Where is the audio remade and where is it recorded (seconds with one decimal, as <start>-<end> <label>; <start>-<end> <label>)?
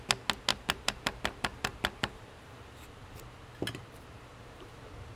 0.0-0.5 recorded; 0.5-1.0 remade; 1.0-1.7 recorded; 1.7-4.8 remade; 4.8-5.2 recorded